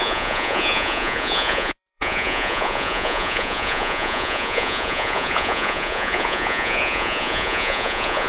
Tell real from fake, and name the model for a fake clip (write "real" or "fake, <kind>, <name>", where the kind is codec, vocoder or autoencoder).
fake, vocoder, Vocos